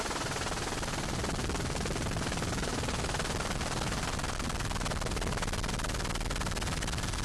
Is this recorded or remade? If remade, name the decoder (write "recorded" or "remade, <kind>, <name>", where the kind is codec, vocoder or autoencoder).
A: recorded